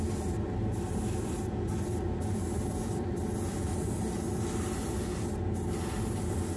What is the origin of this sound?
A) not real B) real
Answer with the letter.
B